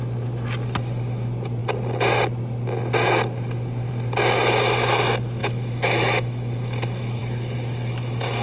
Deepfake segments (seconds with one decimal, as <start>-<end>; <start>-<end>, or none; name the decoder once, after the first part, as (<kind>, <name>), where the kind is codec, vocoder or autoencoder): 5.4-7.2 (autoencoder, DAC-VAE)

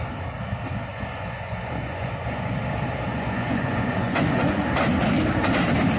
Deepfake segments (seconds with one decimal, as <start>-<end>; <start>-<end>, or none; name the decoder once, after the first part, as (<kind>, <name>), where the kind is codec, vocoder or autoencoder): 0.9-2.5 (vocoder, Vocos); 3.1-4.7

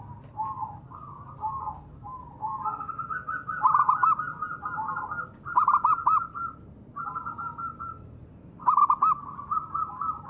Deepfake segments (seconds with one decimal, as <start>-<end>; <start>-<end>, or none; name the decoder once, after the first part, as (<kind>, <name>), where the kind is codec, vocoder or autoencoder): none

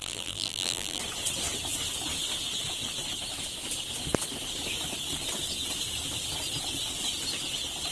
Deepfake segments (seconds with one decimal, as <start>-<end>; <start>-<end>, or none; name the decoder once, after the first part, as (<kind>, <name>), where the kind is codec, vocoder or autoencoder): 0.0-1.0 (vocoder, BigVGAN v2)

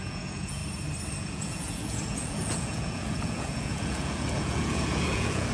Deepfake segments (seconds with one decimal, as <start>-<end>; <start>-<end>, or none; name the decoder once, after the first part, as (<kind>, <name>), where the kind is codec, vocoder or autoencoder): 0.0-0.6 (vocoder, Vocos); 1.2-5.5

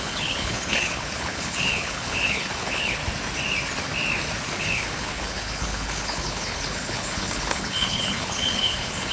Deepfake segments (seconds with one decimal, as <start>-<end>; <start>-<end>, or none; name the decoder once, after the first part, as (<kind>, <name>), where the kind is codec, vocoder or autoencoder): 0.0-3.0 (codec, HILCodec); 4.6-9.1

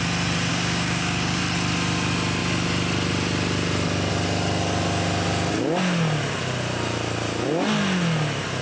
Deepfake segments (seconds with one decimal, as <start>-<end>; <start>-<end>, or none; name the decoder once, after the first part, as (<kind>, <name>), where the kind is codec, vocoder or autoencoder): 0.5-1.4 (codec, DAC)

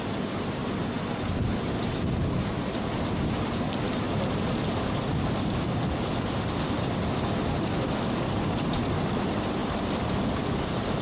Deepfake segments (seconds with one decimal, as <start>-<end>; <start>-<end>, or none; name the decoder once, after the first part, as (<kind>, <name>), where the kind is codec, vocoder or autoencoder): none